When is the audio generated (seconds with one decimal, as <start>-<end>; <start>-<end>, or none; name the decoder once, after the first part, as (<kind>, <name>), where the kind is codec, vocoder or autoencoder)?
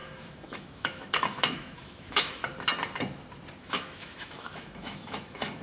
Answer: 0.0-2.4 (autoencoder, DAC-VAE); 3.6-5.6